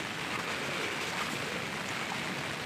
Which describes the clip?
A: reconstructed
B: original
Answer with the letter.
B